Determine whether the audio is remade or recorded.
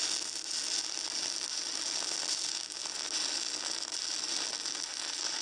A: recorded